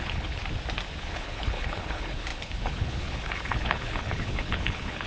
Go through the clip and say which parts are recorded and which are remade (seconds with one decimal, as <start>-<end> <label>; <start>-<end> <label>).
0.0-0.4 remade; 0.4-1.0 recorded; 1.0-5.1 remade